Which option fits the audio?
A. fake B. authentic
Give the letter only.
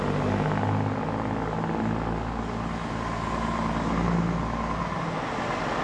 B